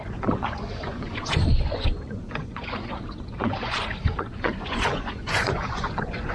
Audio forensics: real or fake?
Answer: fake